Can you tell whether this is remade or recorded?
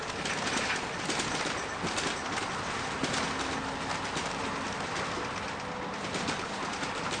recorded